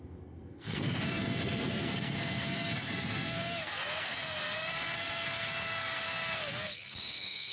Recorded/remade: remade